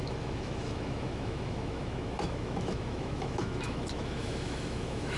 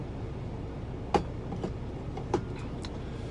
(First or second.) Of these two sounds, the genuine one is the second